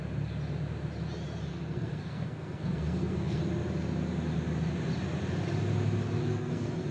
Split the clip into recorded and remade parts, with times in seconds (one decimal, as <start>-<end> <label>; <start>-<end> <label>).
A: 0.0-1.5 recorded; 1.5-3.4 remade; 3.4-6.2 recorded; 6.2-6.9 remade